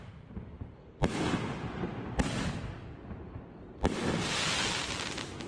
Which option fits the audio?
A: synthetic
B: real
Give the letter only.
B